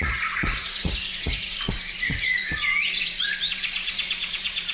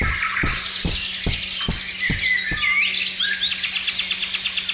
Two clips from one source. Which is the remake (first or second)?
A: first